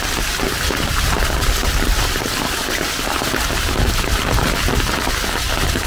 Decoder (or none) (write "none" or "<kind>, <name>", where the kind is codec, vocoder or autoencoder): none